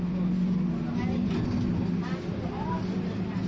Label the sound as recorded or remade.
recorded